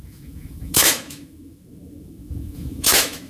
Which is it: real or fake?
fake